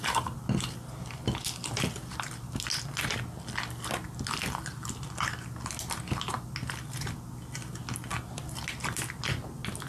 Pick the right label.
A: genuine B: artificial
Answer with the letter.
A